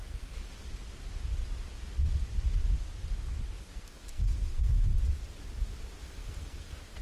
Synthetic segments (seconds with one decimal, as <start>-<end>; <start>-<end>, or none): 0.0-0.4; 3.5-4.9; 6.0-7.0